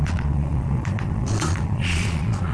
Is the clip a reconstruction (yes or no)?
yes